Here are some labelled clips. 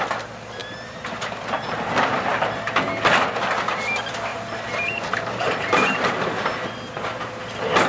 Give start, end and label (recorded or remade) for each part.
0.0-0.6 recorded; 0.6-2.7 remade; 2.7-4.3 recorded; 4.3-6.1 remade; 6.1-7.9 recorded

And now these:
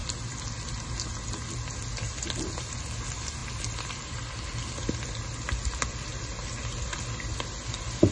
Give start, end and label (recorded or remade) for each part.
0.0-8.1 recorded

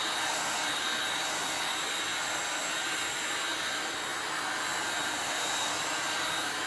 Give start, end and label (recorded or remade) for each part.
0.0-6.7 recorded

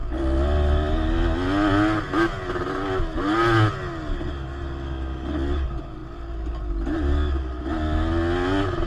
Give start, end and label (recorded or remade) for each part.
0.0-8.9 recorded

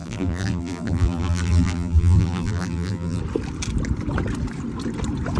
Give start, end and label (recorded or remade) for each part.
0.0-3.2 remade; 3.2-5.4 recorded

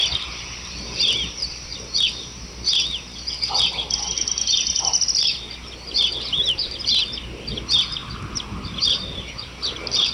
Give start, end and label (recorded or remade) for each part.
0.0-1.7 remade; 1.7-6.1 recorded; 6.1-8.0 remade; 8.0-8.8 recorded; 8.8-10.1 remade

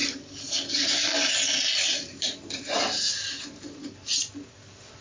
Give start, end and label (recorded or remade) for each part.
0.0-0.9 remade; 0.9-1.9 recorded; 1.9-4.3 remade; 4.3-5.0 recorded